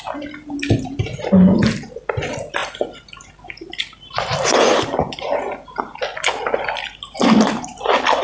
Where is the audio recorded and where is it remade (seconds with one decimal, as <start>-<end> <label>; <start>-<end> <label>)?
0.0-2.6 recorded; 2.6-3.8 remade; 3.8-6.1 recorded; 6.1-8.2 remade